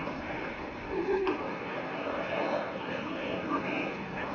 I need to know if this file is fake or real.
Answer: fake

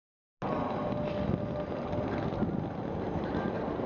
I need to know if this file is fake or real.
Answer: real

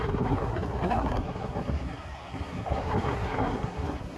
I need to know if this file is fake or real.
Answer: fake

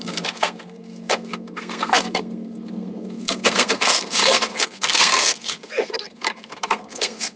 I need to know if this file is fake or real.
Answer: fake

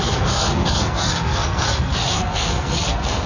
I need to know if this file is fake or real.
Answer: fake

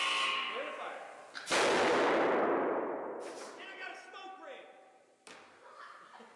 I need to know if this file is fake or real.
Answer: real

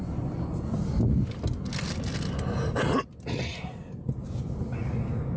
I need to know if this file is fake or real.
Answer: real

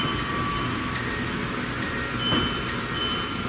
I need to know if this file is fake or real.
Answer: real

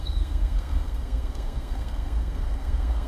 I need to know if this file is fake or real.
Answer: fake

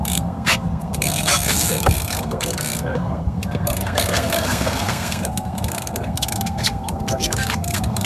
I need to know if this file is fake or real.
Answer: fake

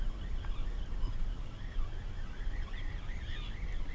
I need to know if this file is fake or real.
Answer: real